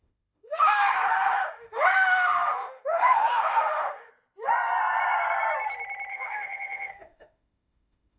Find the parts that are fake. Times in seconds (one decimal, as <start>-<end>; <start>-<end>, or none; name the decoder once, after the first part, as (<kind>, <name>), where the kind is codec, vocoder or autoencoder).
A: 0.0-4.1 (autoencoder, DAC-VAE); 6.1-8.2